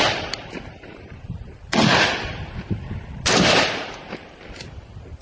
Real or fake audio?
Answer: fake